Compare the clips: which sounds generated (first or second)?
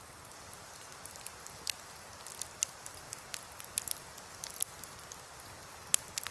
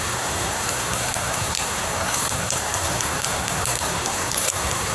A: second